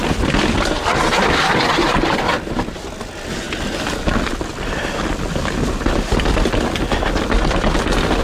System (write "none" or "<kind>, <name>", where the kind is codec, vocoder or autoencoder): none